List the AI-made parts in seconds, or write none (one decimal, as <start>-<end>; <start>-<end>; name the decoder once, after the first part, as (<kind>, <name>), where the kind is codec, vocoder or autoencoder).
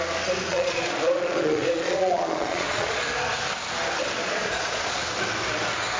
0.5-3.0 (vocoder, Vocos); 4.2-5.1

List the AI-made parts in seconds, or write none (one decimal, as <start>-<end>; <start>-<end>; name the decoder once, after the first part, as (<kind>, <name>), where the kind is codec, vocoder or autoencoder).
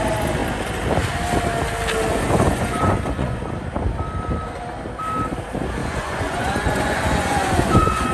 2.1-3.4 (vocoder, Vocos); 5.8-8.1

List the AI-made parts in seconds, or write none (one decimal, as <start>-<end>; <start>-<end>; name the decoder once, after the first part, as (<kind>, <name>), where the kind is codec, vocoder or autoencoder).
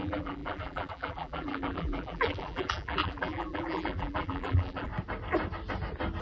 0.0-4.9 (vocoder, BigVGAN v2)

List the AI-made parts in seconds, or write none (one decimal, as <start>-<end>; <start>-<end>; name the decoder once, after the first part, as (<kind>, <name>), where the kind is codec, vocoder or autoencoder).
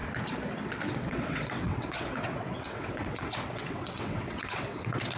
0.9-5.2 (vocoder, WaveNeXt)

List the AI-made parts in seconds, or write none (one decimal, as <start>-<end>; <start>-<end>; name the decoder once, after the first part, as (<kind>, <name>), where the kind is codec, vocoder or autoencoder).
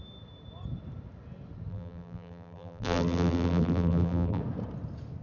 1.7-4.4 (vocoder, BigVGAN v2)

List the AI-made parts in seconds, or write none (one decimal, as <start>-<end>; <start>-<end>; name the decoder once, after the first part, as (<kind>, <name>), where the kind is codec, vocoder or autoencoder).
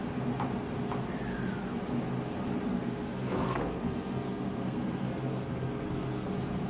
2.7-6.3 (codec, SNAC)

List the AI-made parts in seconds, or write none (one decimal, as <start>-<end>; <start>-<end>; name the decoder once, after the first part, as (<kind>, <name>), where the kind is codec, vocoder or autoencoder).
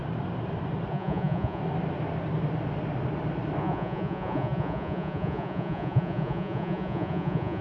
0.9-1.6 (vocoder, Vocos); 3.6-7.6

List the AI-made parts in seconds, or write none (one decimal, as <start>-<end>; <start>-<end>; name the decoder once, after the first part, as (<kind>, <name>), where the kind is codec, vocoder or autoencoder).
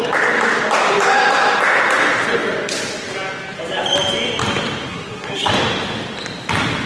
4.9-5.5 (codec, SNAC)